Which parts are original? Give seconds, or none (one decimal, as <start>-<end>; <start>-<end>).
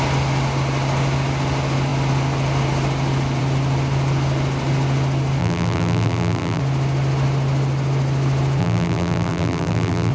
0.0-5.4; 6.6-8.6